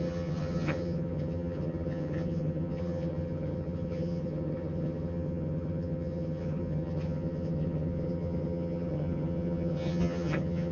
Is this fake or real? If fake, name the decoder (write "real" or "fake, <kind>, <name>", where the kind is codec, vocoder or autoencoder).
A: fake, vocoder, HiFi-GAN